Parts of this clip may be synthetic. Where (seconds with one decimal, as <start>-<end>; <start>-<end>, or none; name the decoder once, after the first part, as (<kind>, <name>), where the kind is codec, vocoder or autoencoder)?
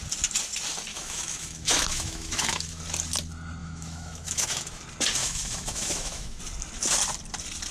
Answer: 0.9-2.8 (autoencoder, DAC-VAE); 3.6-4.8; 5.2-6.4